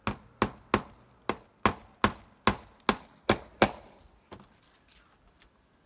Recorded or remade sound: recorded